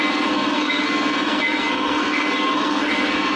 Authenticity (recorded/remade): remade